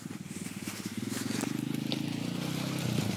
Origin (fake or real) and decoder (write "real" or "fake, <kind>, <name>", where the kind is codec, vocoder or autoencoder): real